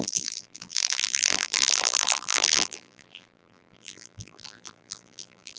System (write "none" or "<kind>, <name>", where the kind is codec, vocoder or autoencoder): vocoder, BigVGAN v2